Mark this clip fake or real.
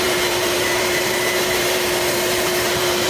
fake